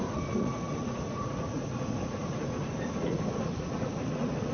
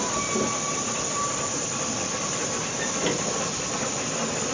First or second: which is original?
second